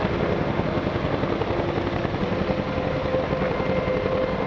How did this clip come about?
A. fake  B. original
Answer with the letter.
B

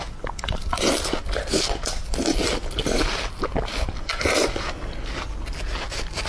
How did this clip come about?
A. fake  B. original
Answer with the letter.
B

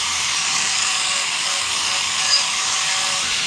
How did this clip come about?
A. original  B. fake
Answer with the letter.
B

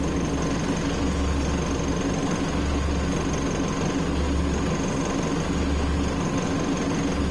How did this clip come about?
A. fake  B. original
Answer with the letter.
B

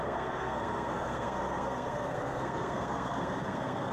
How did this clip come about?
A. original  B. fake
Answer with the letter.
B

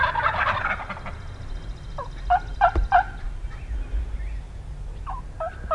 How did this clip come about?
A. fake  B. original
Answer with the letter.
B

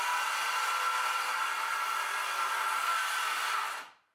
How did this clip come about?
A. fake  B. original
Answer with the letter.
B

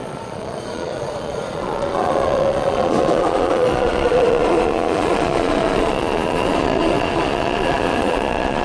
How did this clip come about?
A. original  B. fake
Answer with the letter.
B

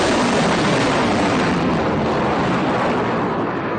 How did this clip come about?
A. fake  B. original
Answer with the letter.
B